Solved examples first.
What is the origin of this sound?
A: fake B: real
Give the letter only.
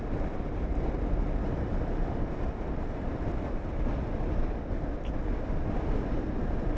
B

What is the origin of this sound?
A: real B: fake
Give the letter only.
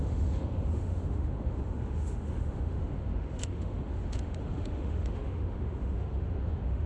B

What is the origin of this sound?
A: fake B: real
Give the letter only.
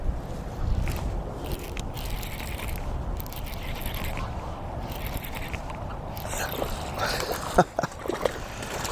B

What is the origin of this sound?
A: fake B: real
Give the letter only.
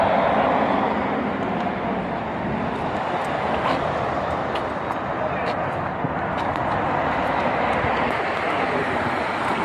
B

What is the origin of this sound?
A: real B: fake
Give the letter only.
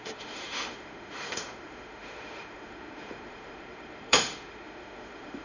B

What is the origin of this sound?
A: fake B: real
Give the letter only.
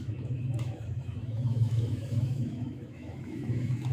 A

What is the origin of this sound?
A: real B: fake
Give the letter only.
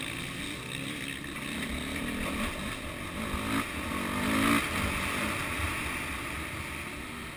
A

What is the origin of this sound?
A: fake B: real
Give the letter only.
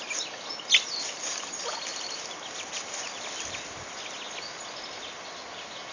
B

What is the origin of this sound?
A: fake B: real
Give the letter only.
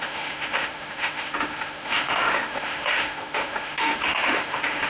A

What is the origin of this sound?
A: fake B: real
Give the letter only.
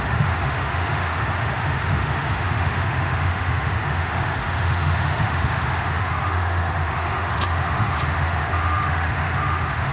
A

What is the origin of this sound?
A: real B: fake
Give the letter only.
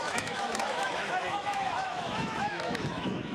B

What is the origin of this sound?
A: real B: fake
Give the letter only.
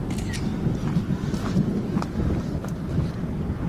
A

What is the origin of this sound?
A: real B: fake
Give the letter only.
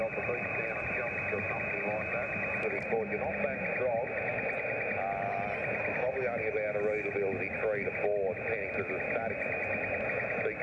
A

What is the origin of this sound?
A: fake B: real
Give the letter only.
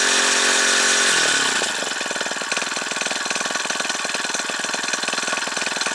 B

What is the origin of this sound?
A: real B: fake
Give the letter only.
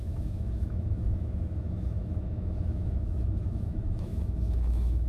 B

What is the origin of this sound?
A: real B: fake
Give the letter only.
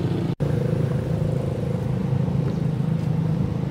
A